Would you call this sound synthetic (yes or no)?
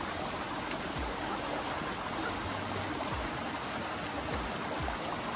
no